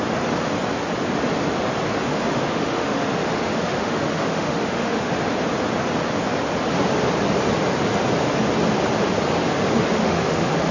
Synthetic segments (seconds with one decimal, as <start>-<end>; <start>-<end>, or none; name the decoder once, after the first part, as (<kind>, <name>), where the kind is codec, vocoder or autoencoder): 2.1-5.1 (autoencoder, DAC-VAE); 10.0-10.7